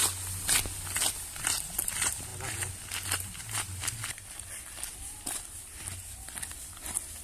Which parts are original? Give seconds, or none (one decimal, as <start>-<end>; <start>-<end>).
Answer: 0.0-7.2